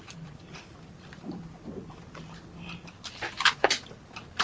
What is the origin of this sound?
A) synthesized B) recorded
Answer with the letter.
B